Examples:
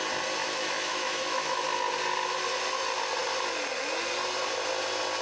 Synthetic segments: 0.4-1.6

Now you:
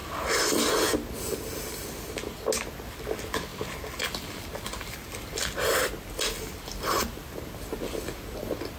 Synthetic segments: none